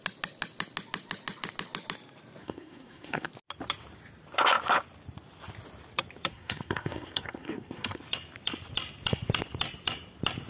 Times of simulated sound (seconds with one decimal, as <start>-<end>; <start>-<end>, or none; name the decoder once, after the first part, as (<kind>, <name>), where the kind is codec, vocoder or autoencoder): 2.4-3.3 (codec, SNAC); 6.3-8.0